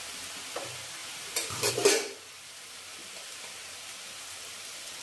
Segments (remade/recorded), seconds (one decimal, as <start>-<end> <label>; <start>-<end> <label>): 0.0-1.0 recorded; 1.0-1.7 remade; 1.7-3.0 recorded; 3.0-5.0 remade